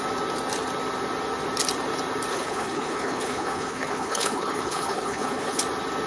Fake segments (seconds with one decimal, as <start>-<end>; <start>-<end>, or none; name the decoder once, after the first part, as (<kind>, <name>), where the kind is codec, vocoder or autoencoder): 2.3-5.6 (codec, HILCodec)